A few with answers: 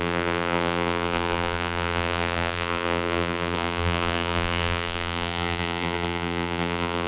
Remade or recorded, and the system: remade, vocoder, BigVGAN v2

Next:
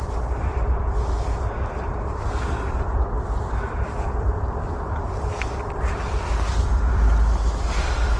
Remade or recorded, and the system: remade, vocoder, BigVGAN v2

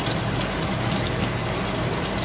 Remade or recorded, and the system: recorded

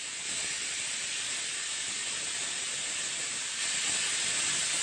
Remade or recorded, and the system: recorded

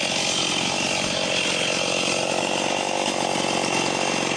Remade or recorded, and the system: recorded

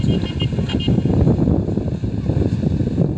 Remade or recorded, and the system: recorded